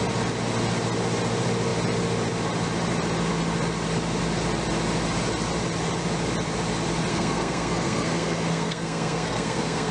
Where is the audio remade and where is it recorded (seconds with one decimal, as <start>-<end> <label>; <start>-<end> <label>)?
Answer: 0.0-7.1 recorded; 7.1-9.9 remade